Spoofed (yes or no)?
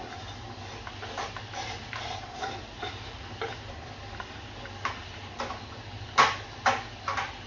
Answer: no